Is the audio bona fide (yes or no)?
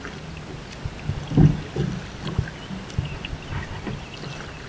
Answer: yes